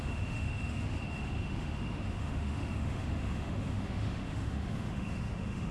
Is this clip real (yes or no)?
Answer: no